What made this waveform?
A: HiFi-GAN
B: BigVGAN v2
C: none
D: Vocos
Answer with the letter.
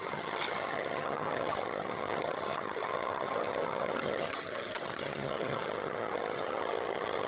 A